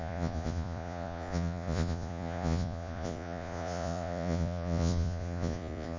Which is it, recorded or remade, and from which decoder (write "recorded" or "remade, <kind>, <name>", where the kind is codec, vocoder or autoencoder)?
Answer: remade, vocoder, Vocos